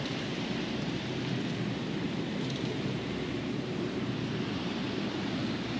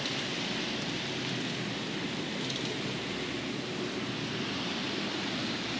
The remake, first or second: first